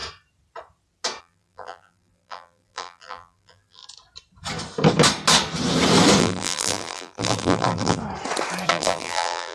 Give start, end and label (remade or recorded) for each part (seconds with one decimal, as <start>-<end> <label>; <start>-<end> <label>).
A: 0.0-1.2 recorded; 1.2-3.8 remade; 3.8-6.2 recorded; 6.2-8.0 remade; 8.0-8.7 recorded; 8.7-9.5 remade